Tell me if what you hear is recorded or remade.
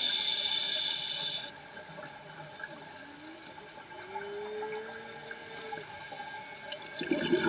recorded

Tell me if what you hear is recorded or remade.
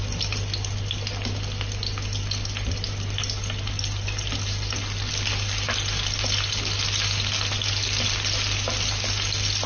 recorded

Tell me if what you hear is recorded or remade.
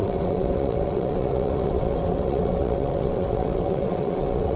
remade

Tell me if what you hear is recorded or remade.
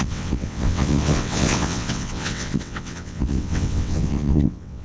remade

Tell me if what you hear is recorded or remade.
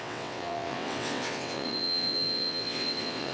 remade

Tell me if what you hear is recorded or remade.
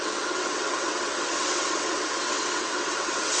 remade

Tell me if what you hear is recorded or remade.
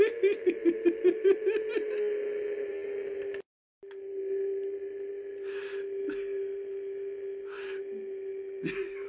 recorded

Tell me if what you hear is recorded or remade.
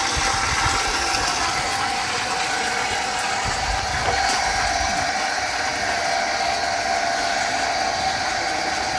recorded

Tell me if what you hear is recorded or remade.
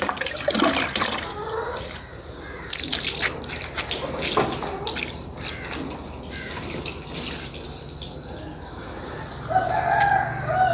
recorded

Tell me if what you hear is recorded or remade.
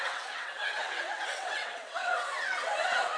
remade